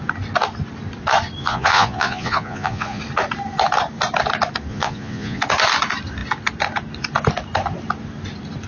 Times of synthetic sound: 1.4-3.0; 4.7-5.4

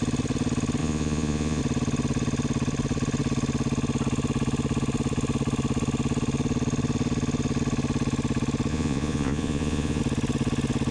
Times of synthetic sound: 0.8-1.6; 8.7-10.0

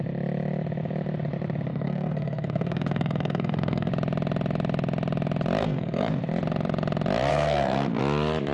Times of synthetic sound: 1.7-3.9; 5.6-6.2; 7.3-8.0

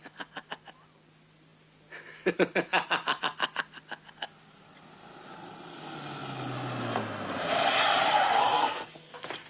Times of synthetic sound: 8.4-9.1